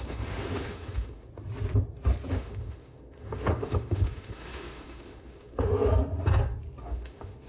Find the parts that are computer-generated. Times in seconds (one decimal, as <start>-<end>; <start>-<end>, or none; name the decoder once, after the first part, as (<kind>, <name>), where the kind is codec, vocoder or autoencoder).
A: 0.0-1.3 (autoencoder, DAC-VAE); 2.3-5.7; 6.8-7.5